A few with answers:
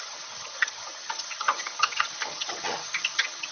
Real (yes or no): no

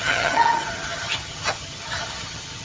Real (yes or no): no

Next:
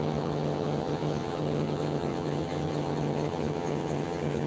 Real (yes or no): no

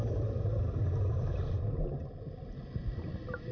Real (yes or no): yes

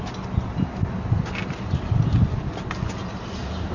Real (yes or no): yes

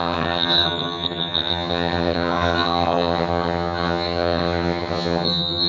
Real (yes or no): no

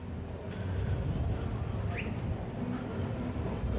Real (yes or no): yes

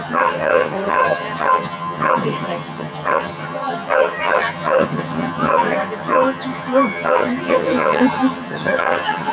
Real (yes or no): no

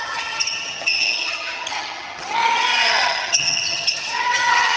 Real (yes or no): no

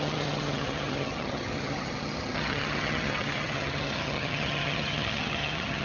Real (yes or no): no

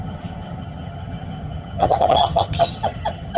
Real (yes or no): no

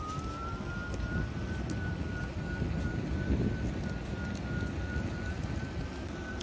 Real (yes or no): yes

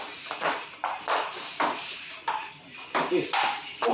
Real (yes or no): yes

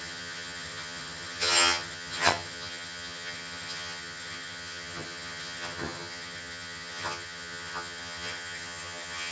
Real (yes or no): no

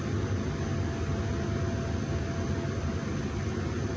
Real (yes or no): yes